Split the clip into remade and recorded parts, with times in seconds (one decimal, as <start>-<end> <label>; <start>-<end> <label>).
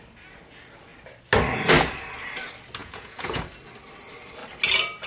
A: 0.0-2.8 recorded; 2.8-3.4 remade; 3.4-5.1 recorded